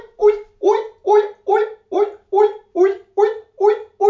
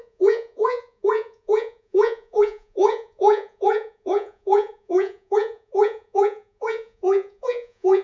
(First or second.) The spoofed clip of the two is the second